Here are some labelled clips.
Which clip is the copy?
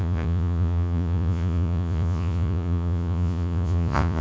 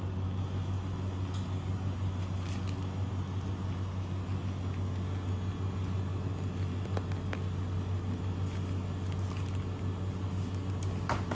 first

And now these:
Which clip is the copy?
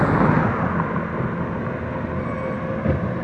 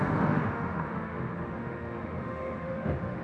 second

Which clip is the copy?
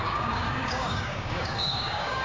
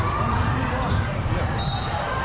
first